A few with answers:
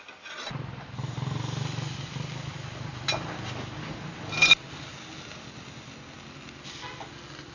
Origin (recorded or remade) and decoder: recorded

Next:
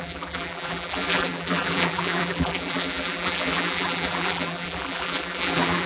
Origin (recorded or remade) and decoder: remade, vocoder, BigVGAN v2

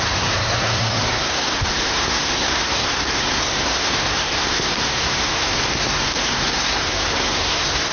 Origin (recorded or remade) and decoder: remade, codec, SNAC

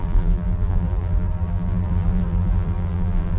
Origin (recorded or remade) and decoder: remade, vocoder, BigVGAN v2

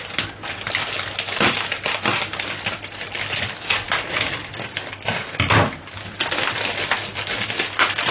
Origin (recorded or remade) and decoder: recorded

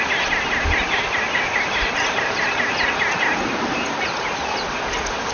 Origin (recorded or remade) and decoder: recorded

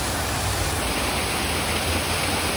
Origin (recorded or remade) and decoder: recorded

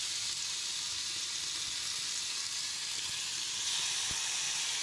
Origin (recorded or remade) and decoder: recorded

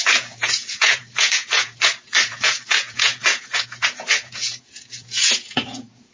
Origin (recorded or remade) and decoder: remade, vocoder, Vocos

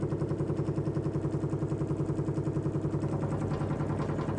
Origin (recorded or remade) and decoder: recorded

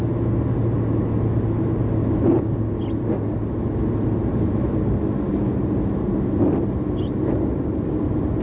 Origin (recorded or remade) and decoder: recorded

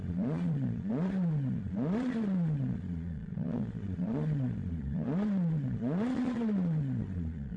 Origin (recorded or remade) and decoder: remade, vocoder, Vocos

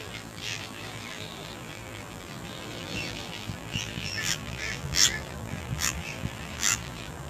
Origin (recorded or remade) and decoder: remade, vocoder, BigVGAN v2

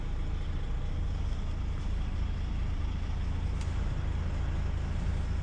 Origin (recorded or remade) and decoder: recorded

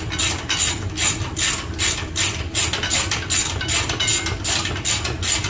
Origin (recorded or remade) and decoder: recorded